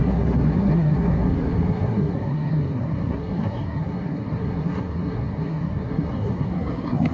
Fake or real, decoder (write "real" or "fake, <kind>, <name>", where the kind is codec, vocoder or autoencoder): fake, codec, SNAC